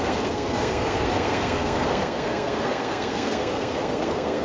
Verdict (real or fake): fake